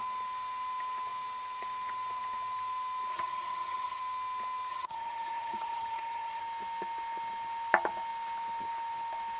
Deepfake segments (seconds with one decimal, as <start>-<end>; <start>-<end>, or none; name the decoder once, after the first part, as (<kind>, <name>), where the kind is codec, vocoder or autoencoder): 3.1-4.0 (vocoder, HiFi-GAN); 4.7-6.4